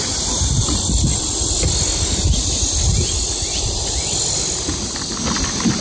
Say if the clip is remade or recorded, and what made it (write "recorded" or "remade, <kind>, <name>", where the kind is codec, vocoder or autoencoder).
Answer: remade, vocoder, BigVGAN v2